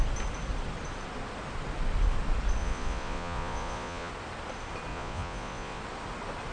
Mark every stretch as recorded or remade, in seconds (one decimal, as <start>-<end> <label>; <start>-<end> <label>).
0.0-2.6 recorded; 2.6-4.1 remade; 4.1-4.9 recorded; 4.9-5.8 remade; 5.8-6.5 recorded